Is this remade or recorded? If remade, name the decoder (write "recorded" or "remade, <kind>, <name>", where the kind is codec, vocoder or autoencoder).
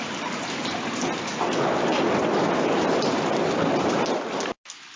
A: recorded